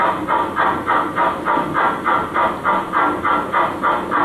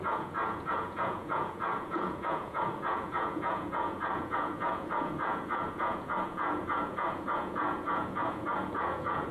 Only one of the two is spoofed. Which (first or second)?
second